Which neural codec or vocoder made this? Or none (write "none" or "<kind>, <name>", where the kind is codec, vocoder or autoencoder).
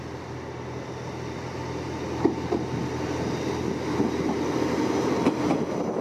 none